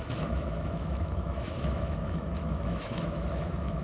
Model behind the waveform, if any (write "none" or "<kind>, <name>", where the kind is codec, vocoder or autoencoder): autoencoder, DAC-VAE